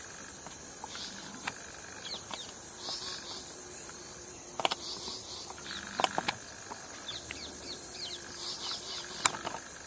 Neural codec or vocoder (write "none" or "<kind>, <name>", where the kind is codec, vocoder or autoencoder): none